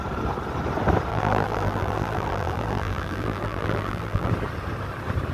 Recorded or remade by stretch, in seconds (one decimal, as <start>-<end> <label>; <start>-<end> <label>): 0.0-1.1 recorded; 1.1-4.3 remade; 4.3-5.3 recorded